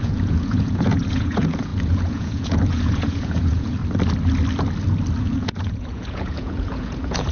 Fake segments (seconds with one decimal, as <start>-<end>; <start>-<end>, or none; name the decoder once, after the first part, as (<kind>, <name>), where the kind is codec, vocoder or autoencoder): 0.0-3.8 (vocoder, Vocos); 5.2-7.3